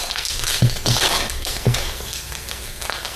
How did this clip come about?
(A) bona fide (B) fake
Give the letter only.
B